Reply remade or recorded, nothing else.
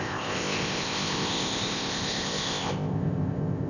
remade